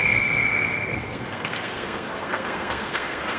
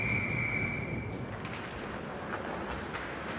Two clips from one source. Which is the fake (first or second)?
first